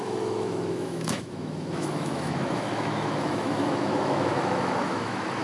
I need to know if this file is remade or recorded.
remade